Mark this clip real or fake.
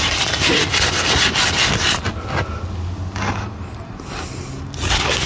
real